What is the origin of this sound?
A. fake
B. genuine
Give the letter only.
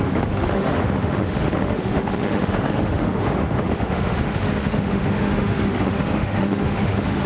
A